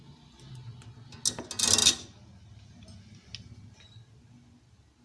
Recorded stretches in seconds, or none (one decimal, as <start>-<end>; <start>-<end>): 0.0-5.0